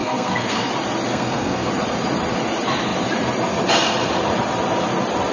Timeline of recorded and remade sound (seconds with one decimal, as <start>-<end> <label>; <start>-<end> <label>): 0.0-0.7 remade; 0.7-1.1 recorded; 1.1-1.7 remade; 1.7-5.3 recorded